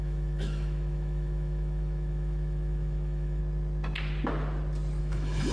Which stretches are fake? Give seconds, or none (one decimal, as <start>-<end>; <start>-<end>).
0.0-3.4; 5.0-5.5